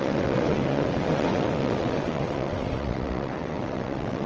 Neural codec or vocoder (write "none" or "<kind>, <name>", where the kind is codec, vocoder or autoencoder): vocoder, WaveNeXt